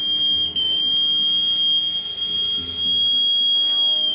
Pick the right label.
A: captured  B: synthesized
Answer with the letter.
A